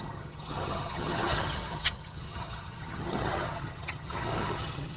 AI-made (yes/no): yes